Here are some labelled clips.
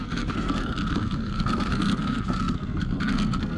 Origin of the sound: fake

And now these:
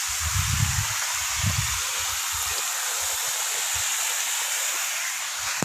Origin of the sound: real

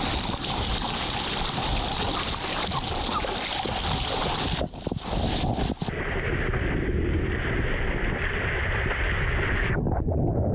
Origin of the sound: real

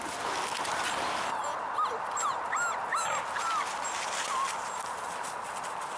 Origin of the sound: real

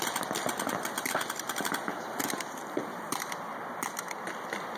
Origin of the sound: real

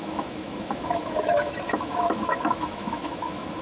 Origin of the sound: fake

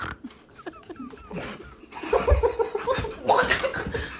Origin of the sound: real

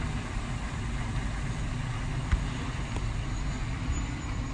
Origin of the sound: real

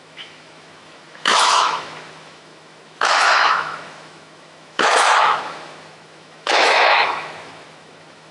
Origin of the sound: fake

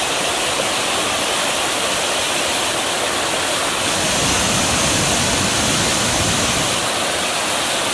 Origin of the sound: real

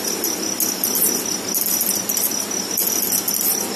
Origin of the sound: real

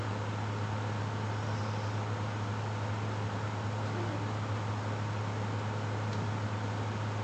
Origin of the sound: real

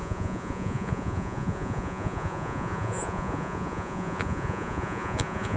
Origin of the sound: fake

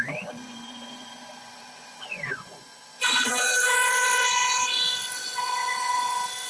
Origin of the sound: fake